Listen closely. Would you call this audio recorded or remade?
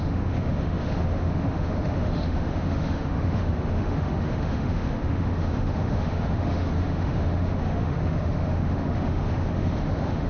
remade